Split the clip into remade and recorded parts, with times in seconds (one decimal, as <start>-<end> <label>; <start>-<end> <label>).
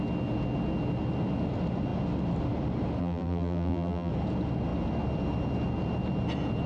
0.0-3.0 recorded; 3.0-4.1 remade; 4.1-6.7 recorded